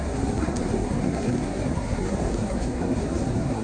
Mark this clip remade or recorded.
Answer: remade